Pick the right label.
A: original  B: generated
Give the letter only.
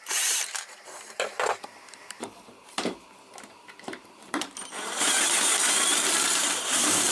B